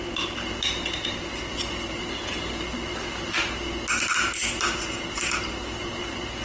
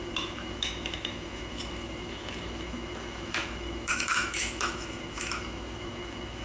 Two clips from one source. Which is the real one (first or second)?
first